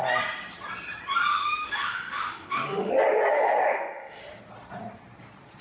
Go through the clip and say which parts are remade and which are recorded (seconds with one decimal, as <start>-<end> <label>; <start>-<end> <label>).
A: 0.0-1.3 recorded; 1.3-2.9 remade; 2.9-3.3 recorded; 3.3-4.2 remade; 4.2-5.6 recorded